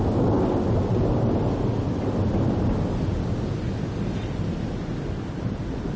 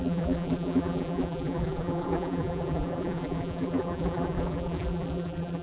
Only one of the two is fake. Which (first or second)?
second